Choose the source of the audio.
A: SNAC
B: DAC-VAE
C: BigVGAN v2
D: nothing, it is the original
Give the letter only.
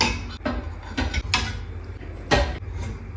D